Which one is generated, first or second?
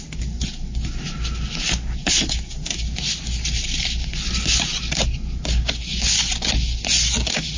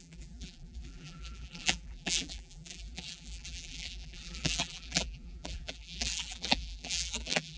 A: second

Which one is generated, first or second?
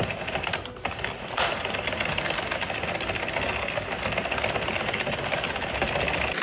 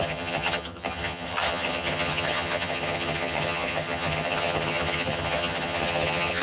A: second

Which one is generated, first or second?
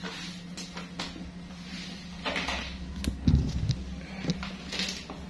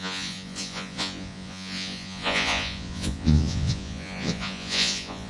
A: second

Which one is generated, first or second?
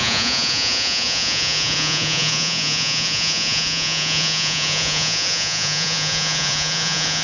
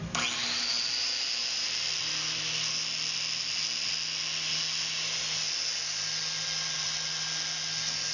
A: first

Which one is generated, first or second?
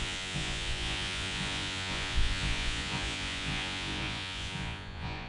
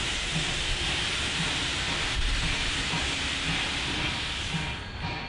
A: first